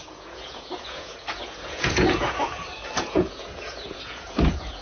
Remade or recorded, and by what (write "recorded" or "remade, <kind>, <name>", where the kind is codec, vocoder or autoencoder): remade, vocoder, Vocos